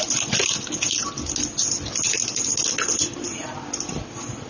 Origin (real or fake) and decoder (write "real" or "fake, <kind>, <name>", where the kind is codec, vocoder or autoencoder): real